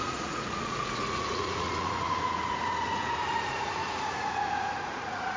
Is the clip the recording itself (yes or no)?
no